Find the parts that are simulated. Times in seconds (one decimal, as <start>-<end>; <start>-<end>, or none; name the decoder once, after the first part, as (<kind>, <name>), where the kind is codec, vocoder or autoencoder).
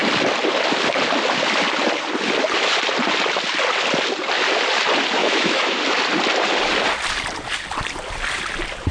5.2-5.8 (autoencoder, DAC-VAE)